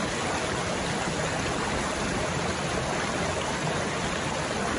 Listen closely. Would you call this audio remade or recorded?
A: recorded